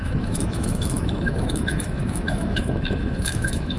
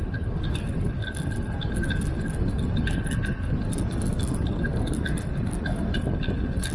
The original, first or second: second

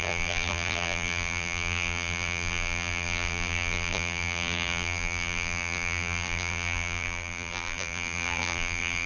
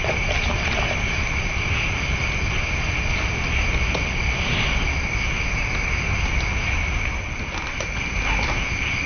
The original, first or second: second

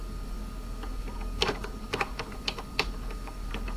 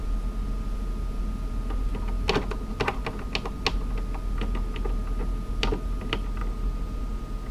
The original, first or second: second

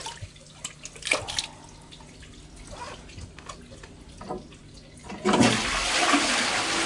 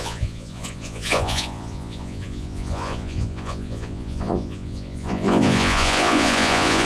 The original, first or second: first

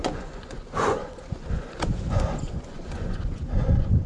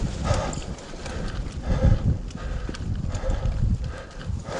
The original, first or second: second